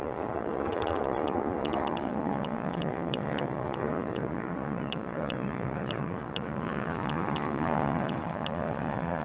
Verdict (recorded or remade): remade